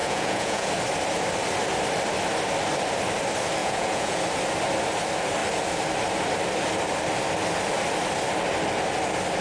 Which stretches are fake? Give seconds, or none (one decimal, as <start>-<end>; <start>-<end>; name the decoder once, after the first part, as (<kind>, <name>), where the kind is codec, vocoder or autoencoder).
0.0-0.7 (vocoder, Vocos); 3.6-4.2